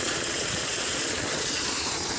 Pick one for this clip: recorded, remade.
remade